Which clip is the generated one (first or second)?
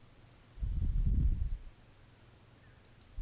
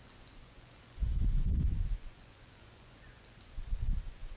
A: second